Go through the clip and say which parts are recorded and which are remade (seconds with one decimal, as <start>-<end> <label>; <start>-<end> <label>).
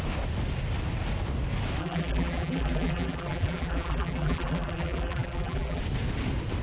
0.0-1.8 recorded; 1.8-5.8 remade; 5.8-6.6 recorded